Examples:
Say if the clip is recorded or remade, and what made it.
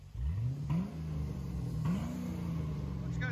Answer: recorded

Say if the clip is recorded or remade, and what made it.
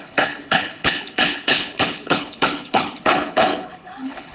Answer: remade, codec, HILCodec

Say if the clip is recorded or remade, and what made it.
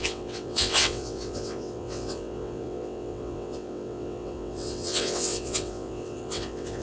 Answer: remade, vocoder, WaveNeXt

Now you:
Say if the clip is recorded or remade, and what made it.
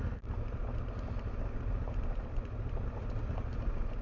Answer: recorded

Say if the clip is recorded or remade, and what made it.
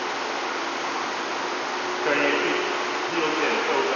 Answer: recorded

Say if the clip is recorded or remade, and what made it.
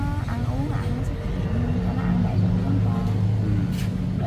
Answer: recorded